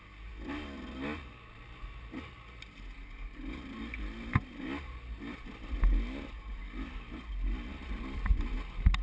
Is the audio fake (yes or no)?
no